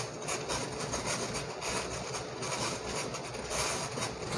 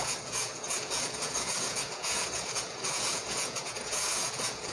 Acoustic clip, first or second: first